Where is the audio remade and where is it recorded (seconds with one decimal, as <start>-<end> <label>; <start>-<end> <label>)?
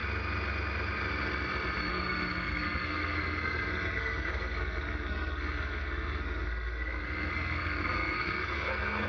0.0-1.9 recorded; 1.9-9.1 remade